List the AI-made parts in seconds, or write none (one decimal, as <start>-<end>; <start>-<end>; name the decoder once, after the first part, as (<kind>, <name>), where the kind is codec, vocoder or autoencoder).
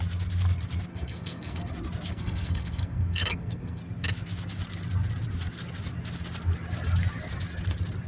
0.9-1.7 (codec, SNAC); 2.1-3.8